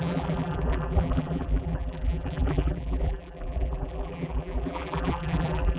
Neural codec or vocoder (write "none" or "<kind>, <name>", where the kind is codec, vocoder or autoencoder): vocoder, BigVGAN v2